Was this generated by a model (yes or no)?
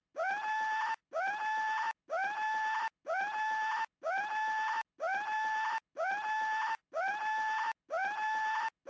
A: no